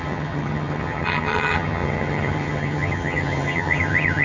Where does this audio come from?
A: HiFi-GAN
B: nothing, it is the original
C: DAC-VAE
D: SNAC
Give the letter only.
A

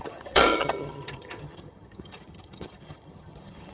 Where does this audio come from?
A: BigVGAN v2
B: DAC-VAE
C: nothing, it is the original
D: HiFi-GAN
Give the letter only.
D